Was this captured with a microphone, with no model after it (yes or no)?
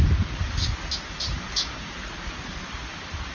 yes